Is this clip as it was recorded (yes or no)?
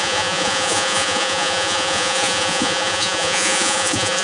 no